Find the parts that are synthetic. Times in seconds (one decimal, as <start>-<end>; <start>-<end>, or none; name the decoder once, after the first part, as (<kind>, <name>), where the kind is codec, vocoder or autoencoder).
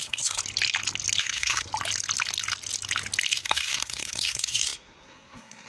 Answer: 0.0-0.4 (codec, SNAC); 1.2-1.7; 3.3-5.7